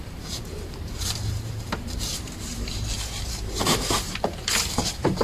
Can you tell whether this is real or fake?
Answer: fake